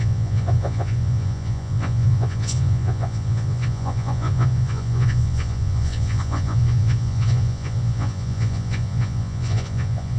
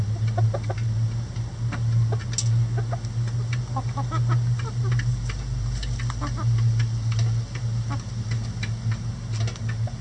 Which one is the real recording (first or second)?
second